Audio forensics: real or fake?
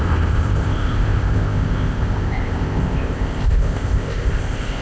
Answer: fake